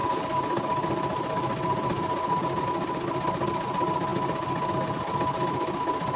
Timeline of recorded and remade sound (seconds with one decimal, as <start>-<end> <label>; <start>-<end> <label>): 0.0-6.2 recorded